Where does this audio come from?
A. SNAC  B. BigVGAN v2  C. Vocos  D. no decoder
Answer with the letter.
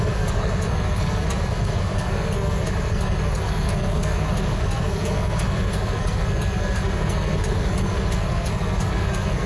A